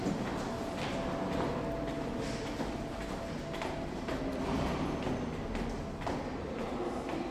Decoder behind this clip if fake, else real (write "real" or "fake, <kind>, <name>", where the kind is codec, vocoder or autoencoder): real